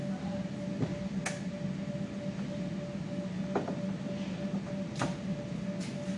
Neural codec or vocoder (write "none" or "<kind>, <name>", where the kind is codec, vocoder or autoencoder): none